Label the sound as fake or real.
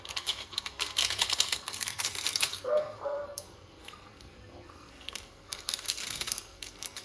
fake